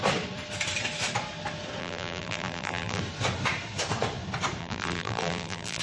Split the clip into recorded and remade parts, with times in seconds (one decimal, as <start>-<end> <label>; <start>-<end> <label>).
0.0-1.8 recorded; 1.8-3.0 remade; 3.0-4.6 recorded; 4.6-5.8 remade